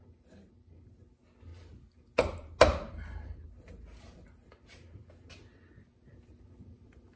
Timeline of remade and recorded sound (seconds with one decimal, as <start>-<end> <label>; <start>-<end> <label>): 0.0-7.2 recorded